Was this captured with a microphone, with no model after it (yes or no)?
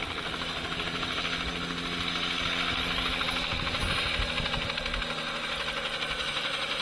yes